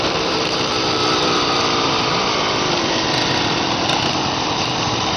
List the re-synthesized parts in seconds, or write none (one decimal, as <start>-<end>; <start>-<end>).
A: 0.0-1.0; 4.1-5.2